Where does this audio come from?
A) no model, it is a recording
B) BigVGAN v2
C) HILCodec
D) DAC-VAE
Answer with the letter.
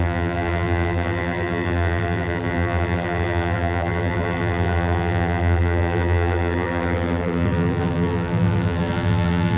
B